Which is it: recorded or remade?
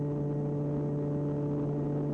recorded